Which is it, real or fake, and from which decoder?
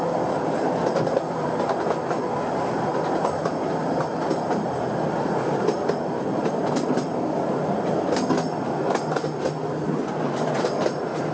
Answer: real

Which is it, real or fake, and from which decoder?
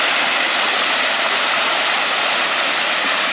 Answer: real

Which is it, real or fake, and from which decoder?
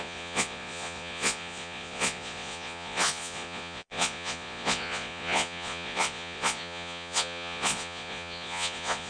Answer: fake, vocoder, Vocos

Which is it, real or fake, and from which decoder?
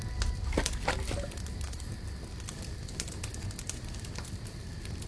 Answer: real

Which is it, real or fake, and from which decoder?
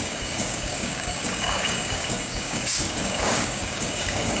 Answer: fake, codec, DAC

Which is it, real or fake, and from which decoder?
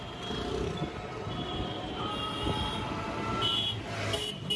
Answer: real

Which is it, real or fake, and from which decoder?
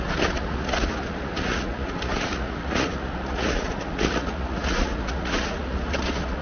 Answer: fake, vocoder, Vocos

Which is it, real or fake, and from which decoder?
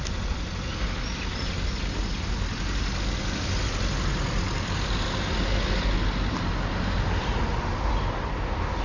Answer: real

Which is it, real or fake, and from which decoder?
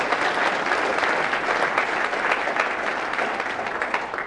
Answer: real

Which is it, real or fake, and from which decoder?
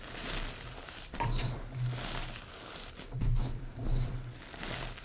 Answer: fake, vocoder, BigVGAN v2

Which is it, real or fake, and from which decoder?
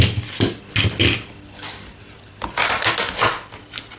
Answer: real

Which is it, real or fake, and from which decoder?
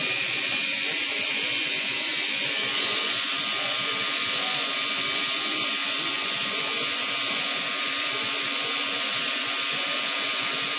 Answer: fake, vocoder, Vocos